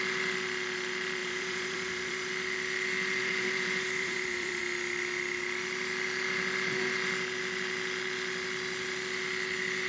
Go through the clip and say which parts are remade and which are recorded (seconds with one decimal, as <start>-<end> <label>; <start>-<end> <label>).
0.0-1.2 recorded; 1.2-2.3 remade; 2.3-3.2 recorded; 3.2-4.6 remade; 4.6-9.9 recorded